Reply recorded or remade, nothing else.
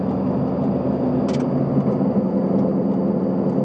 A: recorded